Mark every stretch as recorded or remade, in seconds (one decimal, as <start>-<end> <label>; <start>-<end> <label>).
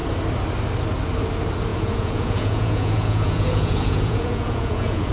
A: 0.0-1.7 recorded; 1.7-5.1 remade